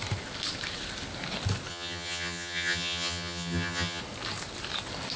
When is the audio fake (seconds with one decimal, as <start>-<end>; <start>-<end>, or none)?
1.7-4.0